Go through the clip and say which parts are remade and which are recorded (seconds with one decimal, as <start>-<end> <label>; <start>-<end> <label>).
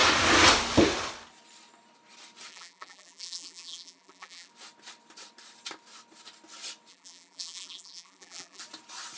0.0-2.5 recorded; 2.5-4.5 remade; 4.5-6.9 recorded; 6.9-8.6 remade; 8.6-9.2 recorded